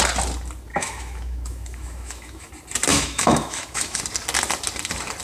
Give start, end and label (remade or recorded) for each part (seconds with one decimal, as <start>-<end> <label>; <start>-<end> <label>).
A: 0.0-0.7 recorded; 0.7-2.5 remade; 2.5-2.9 recorded; 2.9-4.0 remade; 4.0-5.2 recorded